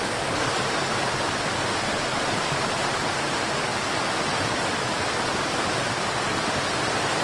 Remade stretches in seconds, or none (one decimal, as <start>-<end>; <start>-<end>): 2.1-3.2